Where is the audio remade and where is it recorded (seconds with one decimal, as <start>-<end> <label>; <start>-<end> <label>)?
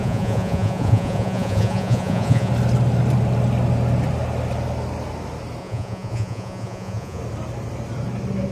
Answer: 0.0-2.5 remade; 2.5-5.6 recorded; 5.6-7.2 remade; 7.2-8.5 recorded